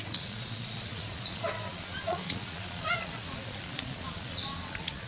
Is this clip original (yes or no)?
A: no